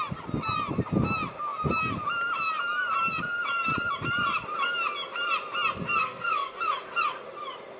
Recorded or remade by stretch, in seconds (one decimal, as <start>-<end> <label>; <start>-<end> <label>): 0.0-6.0 recorded; 6.0-6.7 remade; 6.7-7.8 recorded